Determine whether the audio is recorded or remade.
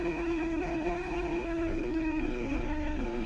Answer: remade